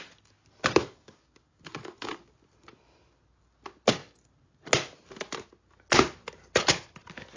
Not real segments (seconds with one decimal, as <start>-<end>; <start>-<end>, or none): 0.8-2.3